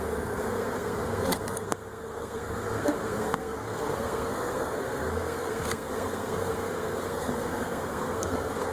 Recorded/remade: remade